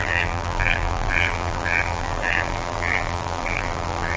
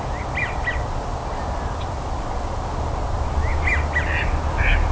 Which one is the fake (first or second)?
first